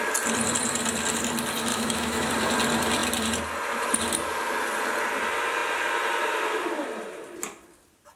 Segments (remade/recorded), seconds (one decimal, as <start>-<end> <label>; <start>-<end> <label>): 0.0-1.7 recorded; 1.7-2.3 remade; 2.3-8.2 recorded